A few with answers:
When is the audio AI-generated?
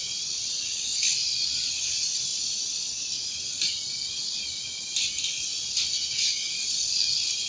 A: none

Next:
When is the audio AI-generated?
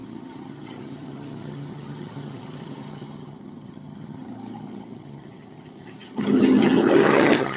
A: 0.0-7.6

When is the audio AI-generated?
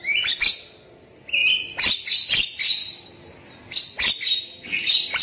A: none